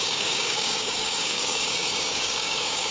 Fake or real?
fake